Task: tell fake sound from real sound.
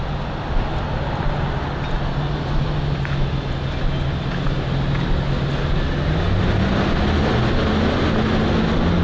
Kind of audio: real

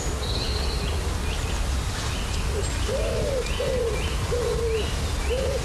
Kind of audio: real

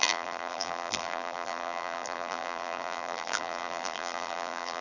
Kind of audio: fake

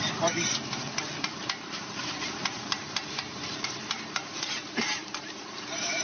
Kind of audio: fake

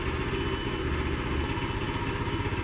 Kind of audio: real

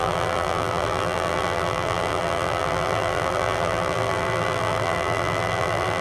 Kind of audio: fake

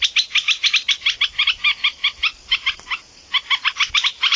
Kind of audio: real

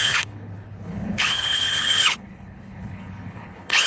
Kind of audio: fake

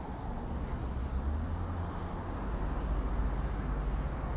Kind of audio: real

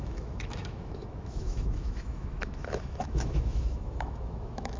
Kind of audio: fake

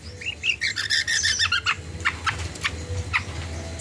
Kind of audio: real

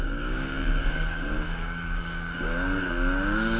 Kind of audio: fake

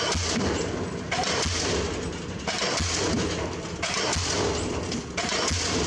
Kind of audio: real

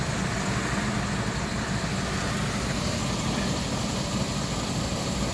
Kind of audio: real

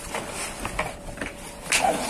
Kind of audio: real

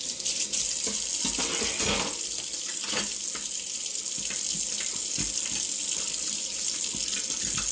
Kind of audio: real